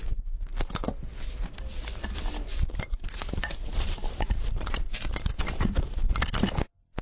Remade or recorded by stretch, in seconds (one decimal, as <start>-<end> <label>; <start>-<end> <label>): 0.0-2.5 recorded; 2.5-6.1 remade; 6.1-7.0 recorded